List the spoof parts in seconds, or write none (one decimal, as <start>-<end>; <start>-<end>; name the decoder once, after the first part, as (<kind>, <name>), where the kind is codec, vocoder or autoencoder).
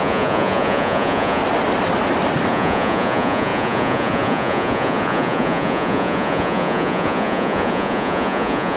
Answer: 0.0-1.4 (vocoder, Vocos); 2.5-8.8